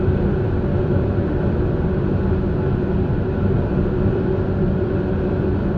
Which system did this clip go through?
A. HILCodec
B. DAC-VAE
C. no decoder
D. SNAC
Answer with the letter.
C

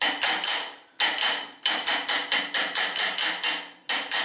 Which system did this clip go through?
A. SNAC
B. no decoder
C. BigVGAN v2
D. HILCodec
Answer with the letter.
B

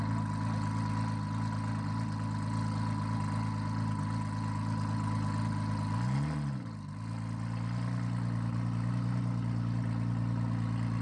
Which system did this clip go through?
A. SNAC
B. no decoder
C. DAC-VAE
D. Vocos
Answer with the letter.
B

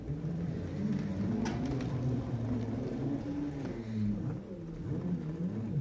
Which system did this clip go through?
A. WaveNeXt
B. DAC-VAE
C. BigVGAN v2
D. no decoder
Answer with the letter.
D